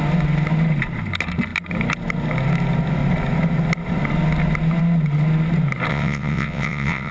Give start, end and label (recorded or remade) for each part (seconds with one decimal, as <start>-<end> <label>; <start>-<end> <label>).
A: 0.0-5.9 recorded; 5.9-7.1 remade